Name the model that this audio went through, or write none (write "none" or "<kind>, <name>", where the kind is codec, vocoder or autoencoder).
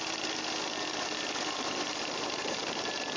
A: none